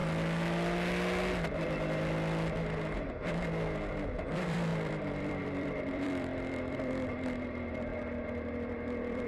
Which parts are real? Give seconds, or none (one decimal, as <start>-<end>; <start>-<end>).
0.0-4.1; 7.9-8.7